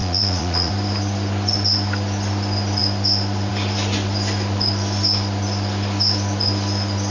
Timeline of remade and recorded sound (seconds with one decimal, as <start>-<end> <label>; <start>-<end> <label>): 0.0-0.7 remade; 0.7-7.1 recorded